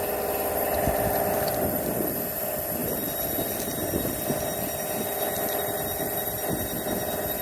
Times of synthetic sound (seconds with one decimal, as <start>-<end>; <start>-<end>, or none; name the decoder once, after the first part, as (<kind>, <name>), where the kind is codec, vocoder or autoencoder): none